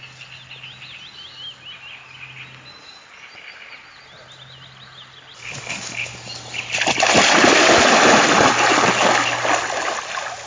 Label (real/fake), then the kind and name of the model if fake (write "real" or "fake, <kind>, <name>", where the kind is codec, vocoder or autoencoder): real